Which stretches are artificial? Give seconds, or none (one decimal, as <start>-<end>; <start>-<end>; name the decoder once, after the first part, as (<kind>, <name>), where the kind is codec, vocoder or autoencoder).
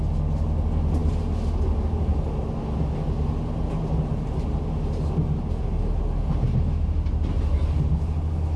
none